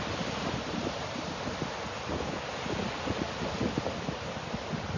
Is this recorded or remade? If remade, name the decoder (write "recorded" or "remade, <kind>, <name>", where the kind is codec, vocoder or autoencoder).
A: recorded